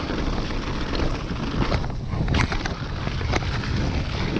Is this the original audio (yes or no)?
yes